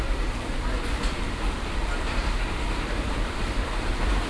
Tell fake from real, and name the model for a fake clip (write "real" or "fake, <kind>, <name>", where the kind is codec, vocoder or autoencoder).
fake, vocoder, BigVGAN v2